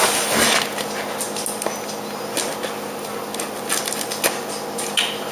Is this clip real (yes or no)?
yes